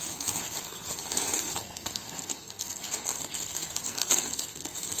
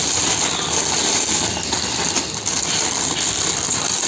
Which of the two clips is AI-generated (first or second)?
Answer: first